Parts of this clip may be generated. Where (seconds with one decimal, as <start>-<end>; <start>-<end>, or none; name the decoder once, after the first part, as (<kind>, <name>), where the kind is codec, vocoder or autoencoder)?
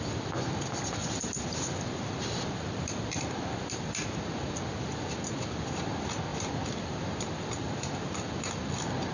1.0-4.2 (vocoder, BigVGAN v2); 6.3-8.1